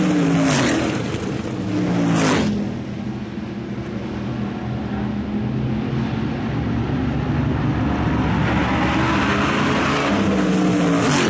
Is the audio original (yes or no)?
yes